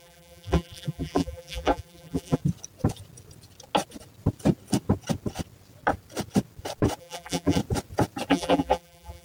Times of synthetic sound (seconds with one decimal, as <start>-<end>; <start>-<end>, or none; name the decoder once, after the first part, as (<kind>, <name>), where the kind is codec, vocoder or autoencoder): 0.0-2.4 (vocoder, BigVGAN v2); 7.0-7.6; 8.3-9.2